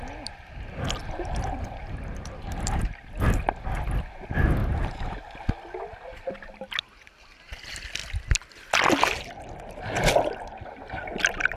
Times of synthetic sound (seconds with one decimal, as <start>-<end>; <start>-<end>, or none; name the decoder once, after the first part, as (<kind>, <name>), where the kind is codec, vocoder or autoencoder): 1.0-2.8 (vocoder, BigVGAN v2)